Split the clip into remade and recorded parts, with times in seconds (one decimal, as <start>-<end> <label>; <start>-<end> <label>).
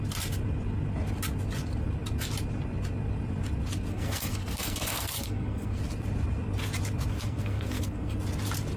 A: 0.0-3.9 recorded; 3.9-5.8 remade; 5.8-7.1 recorded; 7.1-8.2 remade; 8.2-8.8 recorded